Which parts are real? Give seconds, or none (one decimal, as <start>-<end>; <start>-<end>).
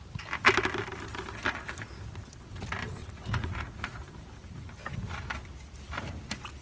0.0-3.0; 4.1-6.6